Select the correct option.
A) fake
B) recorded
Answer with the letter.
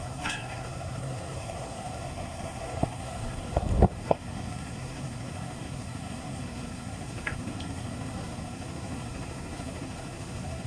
A